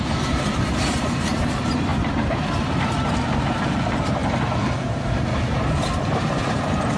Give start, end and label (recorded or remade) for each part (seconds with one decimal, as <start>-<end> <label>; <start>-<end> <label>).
0.0-1.9 remade; 1.9-2.8 recorded; 2.8-4.2 remade; 4.2-4.8 recorded; 4.8-5.3 remade; 5.3-6.1 recorded; 6.1-7.0 remade